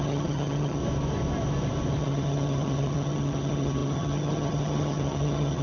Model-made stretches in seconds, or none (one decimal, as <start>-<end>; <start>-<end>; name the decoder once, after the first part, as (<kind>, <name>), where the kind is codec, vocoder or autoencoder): 0.0-0.8 (vocoder, HiFi-GAN); 2.0-5.6